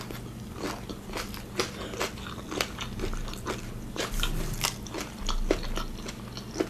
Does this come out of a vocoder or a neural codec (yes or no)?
no